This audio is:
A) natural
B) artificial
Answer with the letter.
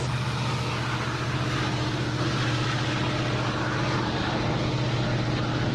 A